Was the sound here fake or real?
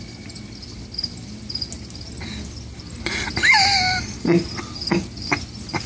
real